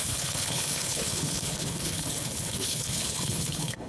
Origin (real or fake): fake